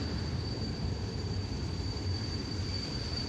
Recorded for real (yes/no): no